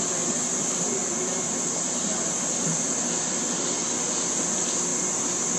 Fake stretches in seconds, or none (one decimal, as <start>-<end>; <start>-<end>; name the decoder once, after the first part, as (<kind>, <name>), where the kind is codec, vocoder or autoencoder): none